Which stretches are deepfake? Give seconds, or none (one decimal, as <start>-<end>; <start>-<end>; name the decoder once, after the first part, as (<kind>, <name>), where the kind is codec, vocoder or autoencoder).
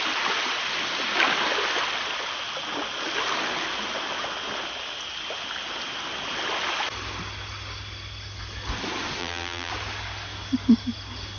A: 9.2-9.7 (vocoder, BigVGAN v2)